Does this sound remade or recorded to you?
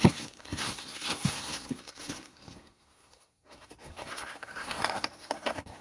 remade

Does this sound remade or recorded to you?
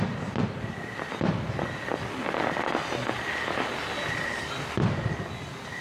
recorded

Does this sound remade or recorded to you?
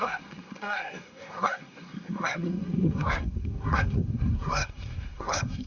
remade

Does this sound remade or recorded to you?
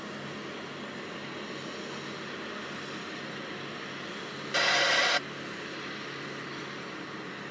recorded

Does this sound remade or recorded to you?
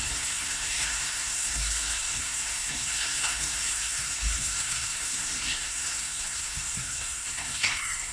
remade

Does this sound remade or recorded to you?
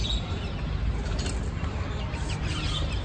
recorded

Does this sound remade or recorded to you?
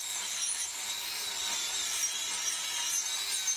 recorded